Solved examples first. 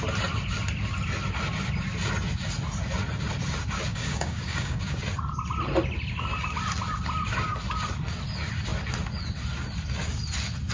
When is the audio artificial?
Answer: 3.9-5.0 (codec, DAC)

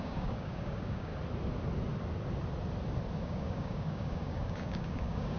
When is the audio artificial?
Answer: 0.0-1.1 (codec, DAC); 3.2-5.4

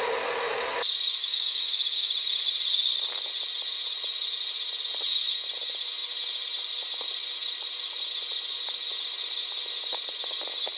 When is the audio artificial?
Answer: 1.2-2.1 (codec, DAC)

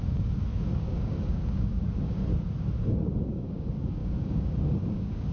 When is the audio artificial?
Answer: 0.0-2.3 (codec, DAC); 3.2-5.3

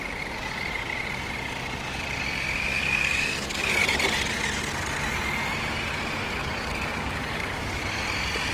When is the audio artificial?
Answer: 2.7-3.7 (codec, DAC); 6.4-7.8

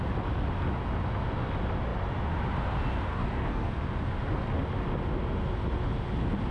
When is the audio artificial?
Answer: 3.1-3.7 (codec, DAC)